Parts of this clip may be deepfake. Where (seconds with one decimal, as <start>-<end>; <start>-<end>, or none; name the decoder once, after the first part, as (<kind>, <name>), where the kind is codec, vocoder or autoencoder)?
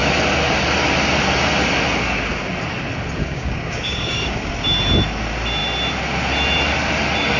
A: 3.2-4.5 (codec, DAC)